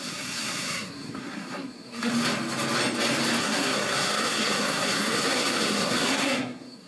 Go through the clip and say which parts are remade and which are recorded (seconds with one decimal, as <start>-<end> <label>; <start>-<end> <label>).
0.0-2.1 remade; 2.1-3.4 recorded; 3.4-6.9 remade